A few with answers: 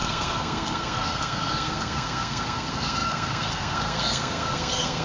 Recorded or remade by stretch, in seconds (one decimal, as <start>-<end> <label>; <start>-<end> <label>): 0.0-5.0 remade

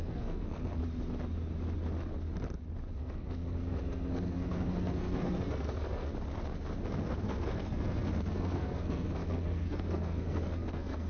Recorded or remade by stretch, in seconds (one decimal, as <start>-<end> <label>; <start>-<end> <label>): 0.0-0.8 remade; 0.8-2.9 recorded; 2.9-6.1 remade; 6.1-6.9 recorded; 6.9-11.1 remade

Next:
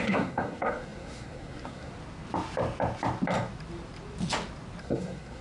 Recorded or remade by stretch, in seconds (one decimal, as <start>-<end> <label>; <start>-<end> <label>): 0.0-1.9 remade; 1.9-4.8 recorded; 4.8-5.4 remade

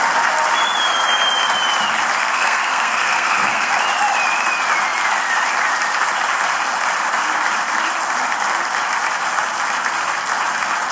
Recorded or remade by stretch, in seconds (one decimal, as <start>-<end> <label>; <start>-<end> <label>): 0.0-2.2 recorded; 2.2-3.7 remade; 3.7-10.9 recorded

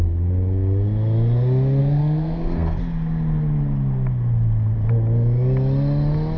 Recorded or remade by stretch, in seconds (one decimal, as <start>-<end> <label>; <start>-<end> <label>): 0.0-1.8 recorded; 1.8-2.8 remade; 2.8-6.4 recorded